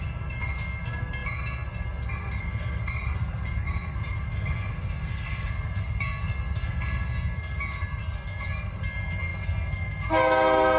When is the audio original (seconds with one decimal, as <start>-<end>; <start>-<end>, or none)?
none